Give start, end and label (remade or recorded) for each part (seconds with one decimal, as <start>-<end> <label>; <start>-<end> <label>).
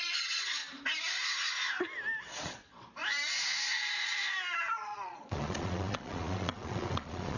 0.0-0.6 remade; 0.6-2.2 recorded; 2.2-3.0 remade; 3.0-4.7 recorded; 4.7-7.4 remade